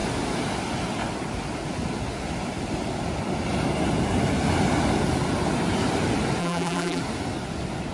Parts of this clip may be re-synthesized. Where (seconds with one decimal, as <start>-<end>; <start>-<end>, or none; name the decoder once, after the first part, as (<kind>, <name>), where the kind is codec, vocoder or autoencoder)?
6.4-7.0 (vocoder, BigVGAN v2)